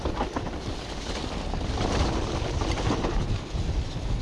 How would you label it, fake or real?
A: fake